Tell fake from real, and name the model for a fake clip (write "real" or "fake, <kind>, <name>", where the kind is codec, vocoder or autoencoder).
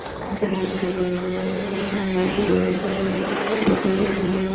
fake, codec, SNAC